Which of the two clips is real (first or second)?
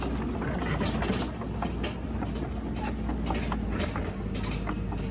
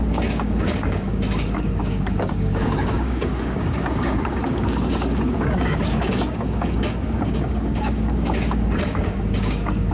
first